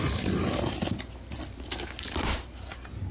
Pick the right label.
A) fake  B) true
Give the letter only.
B